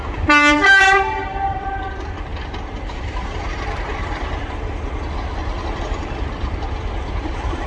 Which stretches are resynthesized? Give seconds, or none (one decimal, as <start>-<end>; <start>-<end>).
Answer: 0.0-7.7